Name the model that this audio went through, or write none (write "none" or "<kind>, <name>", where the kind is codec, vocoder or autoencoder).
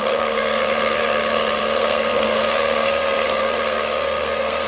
codec, SNAC